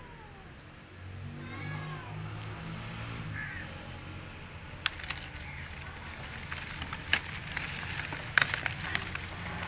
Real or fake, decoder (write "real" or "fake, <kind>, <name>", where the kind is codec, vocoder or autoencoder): real